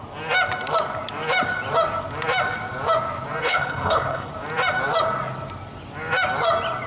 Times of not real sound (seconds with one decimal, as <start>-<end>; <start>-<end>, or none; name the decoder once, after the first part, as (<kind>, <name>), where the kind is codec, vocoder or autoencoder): 3.4-4.3 (codec, HILCodec)